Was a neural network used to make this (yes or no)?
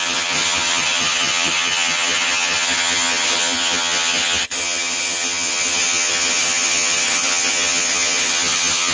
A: yes